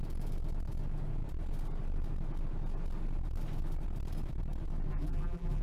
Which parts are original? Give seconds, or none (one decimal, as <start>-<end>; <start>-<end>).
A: 0.0-4.9